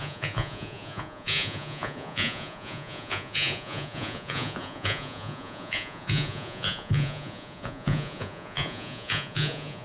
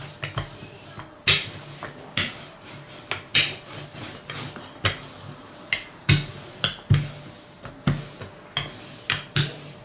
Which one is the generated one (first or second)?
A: first